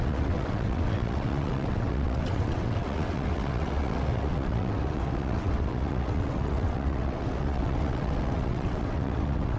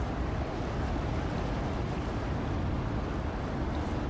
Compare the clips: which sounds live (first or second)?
second